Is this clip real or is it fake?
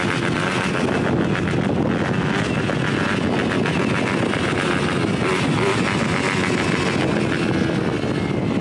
real